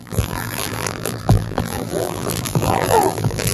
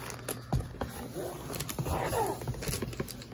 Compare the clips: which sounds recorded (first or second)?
second